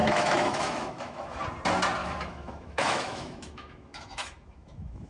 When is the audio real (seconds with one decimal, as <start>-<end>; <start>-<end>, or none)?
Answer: 1.4-2.0